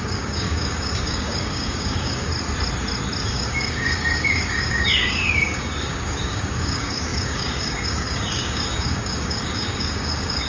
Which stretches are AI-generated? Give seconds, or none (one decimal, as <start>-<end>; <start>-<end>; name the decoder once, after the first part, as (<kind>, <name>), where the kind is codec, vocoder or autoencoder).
0.0-2.3 (codec, DAC); 3.3-10.5